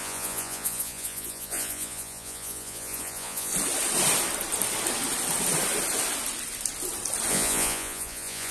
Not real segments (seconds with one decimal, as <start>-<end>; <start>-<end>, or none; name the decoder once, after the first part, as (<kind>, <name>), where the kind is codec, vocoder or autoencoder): 0.0-3.5 (vocoder, Vocos); 7.3-8.5